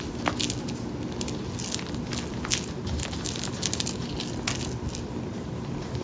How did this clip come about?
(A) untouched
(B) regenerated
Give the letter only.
A